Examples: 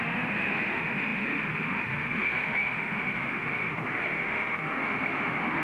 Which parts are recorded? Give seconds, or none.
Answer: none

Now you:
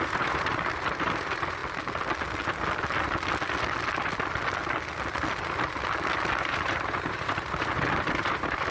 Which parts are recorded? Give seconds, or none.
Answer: 1.6-6.4

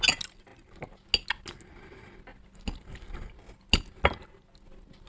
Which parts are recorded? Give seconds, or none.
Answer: 0.0-5.1

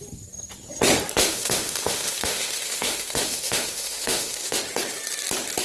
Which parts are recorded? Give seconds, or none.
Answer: 0.0-1.2; 4.6-5.6